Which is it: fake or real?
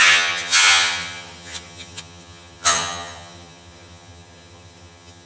fake